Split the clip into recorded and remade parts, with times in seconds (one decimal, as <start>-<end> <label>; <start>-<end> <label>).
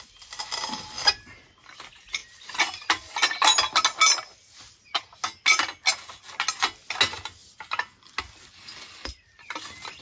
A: 0.0-10.0 recorded